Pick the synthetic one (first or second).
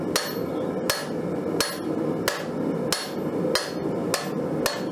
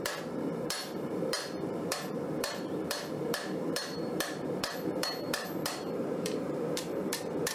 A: second